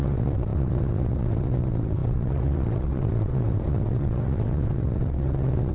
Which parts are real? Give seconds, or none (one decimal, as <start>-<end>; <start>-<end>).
none

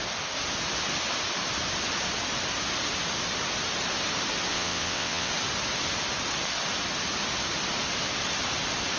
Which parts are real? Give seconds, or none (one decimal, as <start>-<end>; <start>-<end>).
0.0-4.5; 5.3-9.0

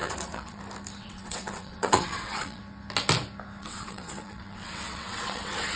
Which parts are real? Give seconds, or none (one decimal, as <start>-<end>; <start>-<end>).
0.6-1.0; 2.6-3.6

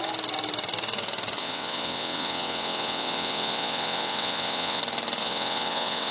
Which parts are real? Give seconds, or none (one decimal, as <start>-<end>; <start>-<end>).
0.0-1.4; 4.8-5.2

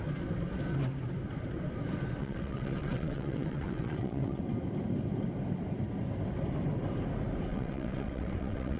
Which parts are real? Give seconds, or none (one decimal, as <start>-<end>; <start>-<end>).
0.0-2.2; 4.4-7.5

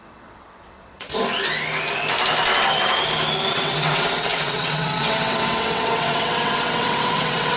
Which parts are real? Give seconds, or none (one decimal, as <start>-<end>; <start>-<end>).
1.1-3.5